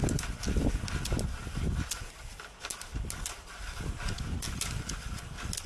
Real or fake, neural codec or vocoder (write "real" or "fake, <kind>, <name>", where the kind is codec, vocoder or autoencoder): real